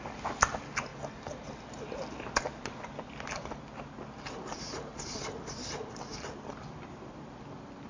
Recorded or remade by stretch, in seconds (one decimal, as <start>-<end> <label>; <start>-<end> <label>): 0.0-4.9 recorded; 4.9-6.8 remade; 6.8-7.9 recorded